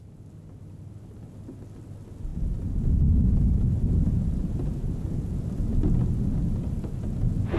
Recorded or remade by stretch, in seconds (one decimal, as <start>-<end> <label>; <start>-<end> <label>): 0.0-7.6 recorded